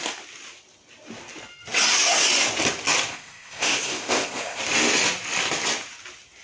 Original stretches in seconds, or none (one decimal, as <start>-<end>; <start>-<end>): 0.0-3.1; 4.6-6.4